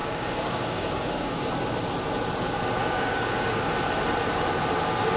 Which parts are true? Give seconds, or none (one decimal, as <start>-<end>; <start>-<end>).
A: 1.5-2.8; 3.7-5.2